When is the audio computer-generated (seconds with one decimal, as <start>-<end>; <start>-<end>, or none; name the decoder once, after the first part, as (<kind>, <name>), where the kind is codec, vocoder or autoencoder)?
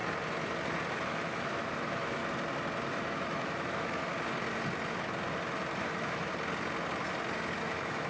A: 0.9-2.2 (autoencoder, DAC-VAE); 2.9-4.1; 5.8-6.3; 7.6-8.1